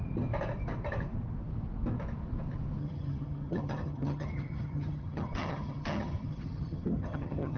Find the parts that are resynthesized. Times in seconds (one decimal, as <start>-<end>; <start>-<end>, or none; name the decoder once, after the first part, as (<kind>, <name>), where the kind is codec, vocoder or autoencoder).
2.8-7.6 (vocoder, HiFi-GAN)